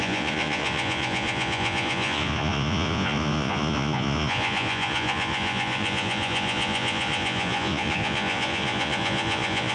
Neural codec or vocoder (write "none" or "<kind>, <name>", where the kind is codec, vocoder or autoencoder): vocoder, Vocos